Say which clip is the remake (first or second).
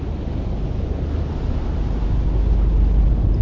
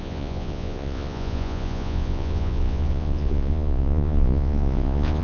second